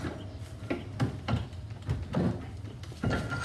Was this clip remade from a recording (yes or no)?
no